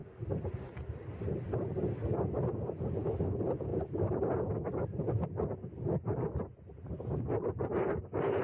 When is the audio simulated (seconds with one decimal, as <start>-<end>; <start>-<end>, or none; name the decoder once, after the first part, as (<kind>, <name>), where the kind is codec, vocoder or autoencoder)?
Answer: 3.7-4.5 (vocoder, BigVGAN v2)